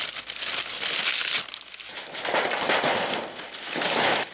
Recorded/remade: recorded